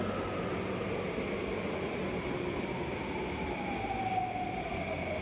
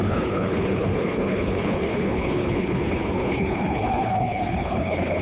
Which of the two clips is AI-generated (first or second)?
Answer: second